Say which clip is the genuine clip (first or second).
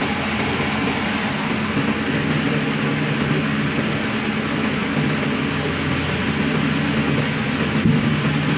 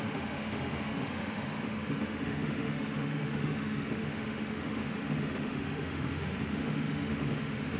first